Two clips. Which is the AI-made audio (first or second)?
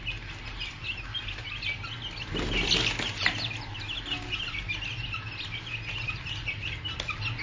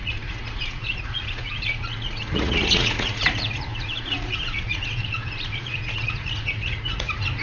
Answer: second